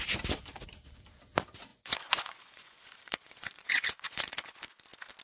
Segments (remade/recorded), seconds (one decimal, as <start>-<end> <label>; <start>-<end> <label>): 0.0-1.7 recorded; 1.7-4.8 remade; 4.8-5.2 recorded